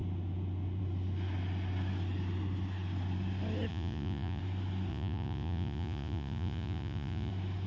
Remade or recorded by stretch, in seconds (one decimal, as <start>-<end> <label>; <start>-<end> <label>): 0.0-3.7 recorded; 3.7-4.4 remade; 4.4-4.9 recorded; 4.9-7.3 remade; 7.3-7.7 recorded